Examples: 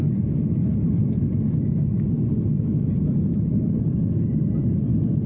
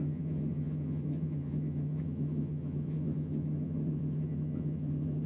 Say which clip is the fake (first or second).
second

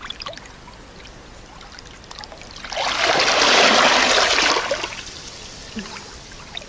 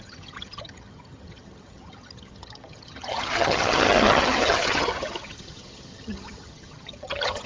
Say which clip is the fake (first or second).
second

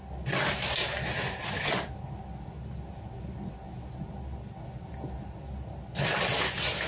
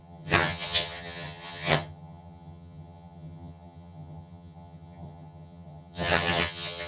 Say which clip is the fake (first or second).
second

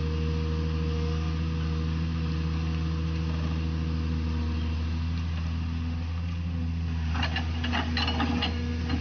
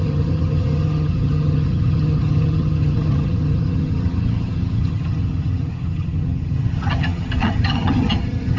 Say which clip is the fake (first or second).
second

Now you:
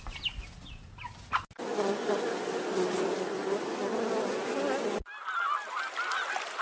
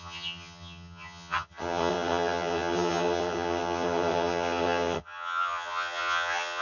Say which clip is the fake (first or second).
second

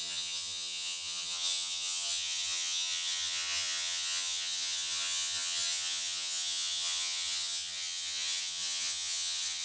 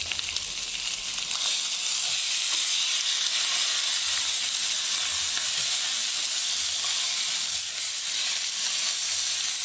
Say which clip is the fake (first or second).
first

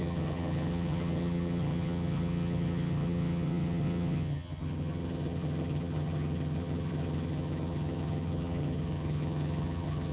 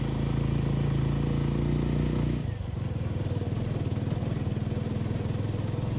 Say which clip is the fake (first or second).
first